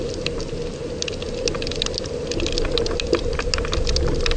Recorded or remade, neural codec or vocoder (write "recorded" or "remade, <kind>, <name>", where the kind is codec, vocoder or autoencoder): recorded